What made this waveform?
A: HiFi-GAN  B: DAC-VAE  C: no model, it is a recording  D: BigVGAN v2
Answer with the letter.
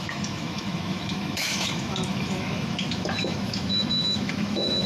B